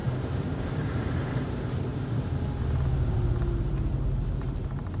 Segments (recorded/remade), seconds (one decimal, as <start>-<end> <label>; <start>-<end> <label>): 0.0-0.7 recorded; 0.7-1.9 remade; 1.9-5.0 recorded

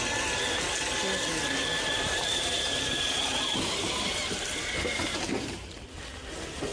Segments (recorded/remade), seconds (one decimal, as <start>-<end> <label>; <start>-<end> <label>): 0.0-2.3 recorded; 2.3-6.0 remade; 6.0-6.7 recorded

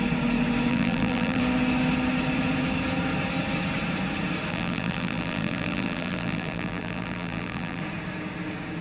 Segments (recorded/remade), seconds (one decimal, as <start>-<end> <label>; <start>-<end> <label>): 0.0-0.7 recorded; 0.7-1.4 remade; 1.4-4.5 recorded; 4.5-7.8 remade; 7.8-8.8 recorded

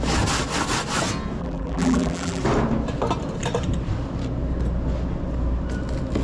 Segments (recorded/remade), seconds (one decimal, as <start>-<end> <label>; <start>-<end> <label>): 0.0-1.4 recorded; 1.4-2.4 remade; 2.4-6.2 recorded

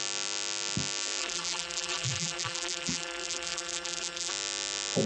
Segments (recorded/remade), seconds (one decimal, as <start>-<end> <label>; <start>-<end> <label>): 0.0-1.2 recorded; 1.2-4.3 remade; 4.3-5.1 recorded